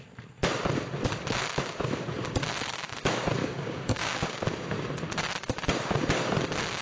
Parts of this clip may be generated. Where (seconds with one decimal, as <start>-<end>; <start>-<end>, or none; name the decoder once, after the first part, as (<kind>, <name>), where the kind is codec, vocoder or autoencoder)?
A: 3.4-4.4 (codec, DAC)